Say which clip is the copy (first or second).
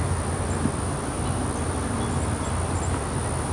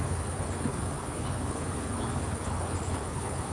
second